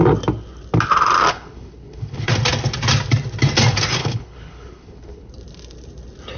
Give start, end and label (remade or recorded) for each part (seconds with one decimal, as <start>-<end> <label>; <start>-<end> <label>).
0.0-1.3 recorded; 1.3-2.3 remade; 2.3-4.0 recorded; 4.0-5.3 remade; 5.3-6.4 recorded